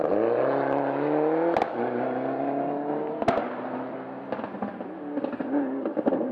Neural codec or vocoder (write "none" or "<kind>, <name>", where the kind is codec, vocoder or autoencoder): none